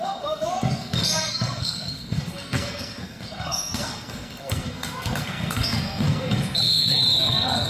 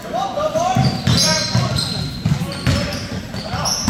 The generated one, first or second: first